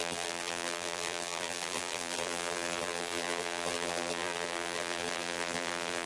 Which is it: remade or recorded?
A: remade